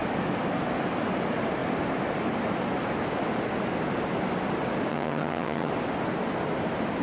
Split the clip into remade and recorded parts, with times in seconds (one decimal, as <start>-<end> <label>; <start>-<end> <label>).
0.0-4.9 recorded; 4.9-5.7 remade; 5.7-7.0 recorded